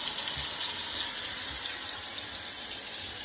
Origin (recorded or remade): recorded